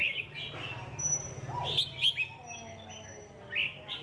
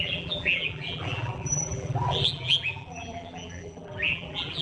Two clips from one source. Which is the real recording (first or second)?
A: first